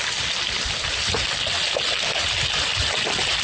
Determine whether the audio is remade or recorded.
recorded